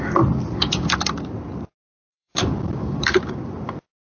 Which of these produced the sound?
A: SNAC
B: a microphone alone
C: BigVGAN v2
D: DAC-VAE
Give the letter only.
C